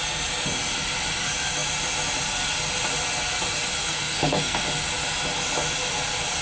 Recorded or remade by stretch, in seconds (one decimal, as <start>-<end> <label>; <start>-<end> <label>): 0.0-3.8 recorded; 3.8-4.6 remade; 4.6-6.4 recorded

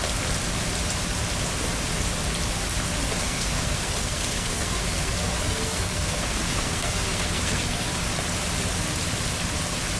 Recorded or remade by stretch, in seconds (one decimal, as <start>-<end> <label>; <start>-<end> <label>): 0.0-3.2 recorded; 3.2-7.9 remade; 7.9-10.0 recorded